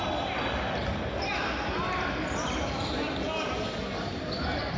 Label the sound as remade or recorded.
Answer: recorded